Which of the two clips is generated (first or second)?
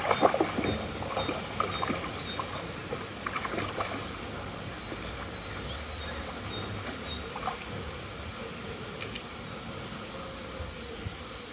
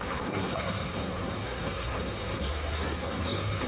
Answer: second